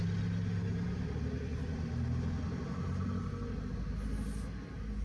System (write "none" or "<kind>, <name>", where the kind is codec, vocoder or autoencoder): none